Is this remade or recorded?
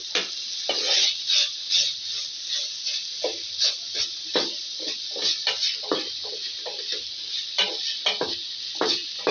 recorded